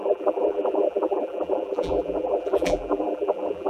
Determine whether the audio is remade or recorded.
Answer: remade